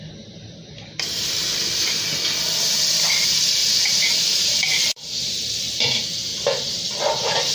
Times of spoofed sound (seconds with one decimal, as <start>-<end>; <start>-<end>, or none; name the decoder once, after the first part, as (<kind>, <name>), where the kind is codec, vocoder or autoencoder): 0.0-0.6 (vocoder, BigVGAN v2); 3.1-7.5